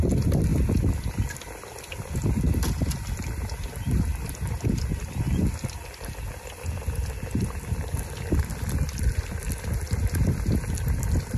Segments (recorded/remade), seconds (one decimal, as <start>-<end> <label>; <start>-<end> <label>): 0.0-11.4 recorded